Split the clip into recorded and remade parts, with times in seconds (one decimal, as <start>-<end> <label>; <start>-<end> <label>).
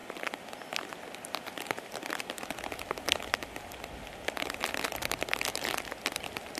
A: 0.0-6.6 recorded